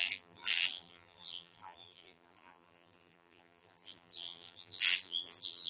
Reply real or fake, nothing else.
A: fake